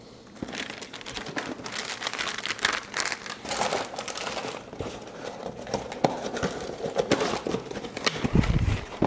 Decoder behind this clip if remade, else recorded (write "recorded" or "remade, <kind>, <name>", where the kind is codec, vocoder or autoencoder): recorded